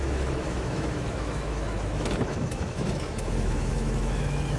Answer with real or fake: fake